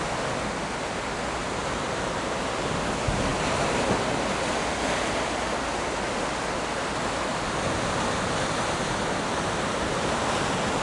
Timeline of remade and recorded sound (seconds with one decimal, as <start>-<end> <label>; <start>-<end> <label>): 0.0-1.4 recorded; 1.4-2.2 remade; 2.2-10.8 recorded